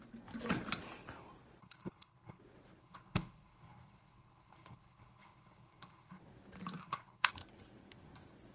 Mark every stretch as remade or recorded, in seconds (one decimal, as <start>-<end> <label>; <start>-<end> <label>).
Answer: 0.0-1.6 recorded; 1.6-2.4 remade; 2.4-2.8 recorded; 2.8-6.2 remade; 6.2-6.8 recorded; 6.8-7.3 remade; 7.3-8.5 recorded